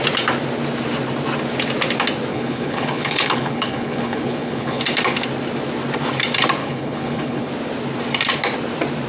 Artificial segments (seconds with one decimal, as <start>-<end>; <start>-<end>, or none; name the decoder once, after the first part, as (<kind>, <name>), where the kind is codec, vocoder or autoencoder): 2.3-4.8 (codec, HILCodec); 6.6-7.5